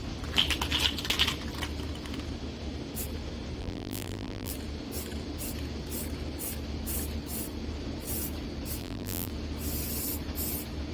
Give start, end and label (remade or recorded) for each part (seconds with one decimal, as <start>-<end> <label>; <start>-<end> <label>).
0.0-3.6 recorded; 3.6-4.5 remade; 4.5-8.8 recorded; 8.8-9.3 remade; 9.3-10.9 recorded